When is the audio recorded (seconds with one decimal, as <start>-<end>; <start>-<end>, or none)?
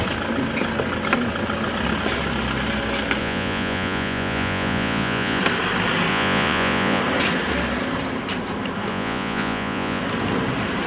0.0-3.2; 5.4-6.1; 7.0-8.9; 10.0-10.9